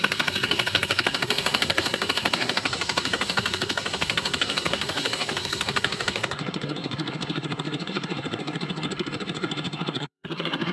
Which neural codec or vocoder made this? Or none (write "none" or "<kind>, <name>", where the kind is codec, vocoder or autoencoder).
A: codec, SNAC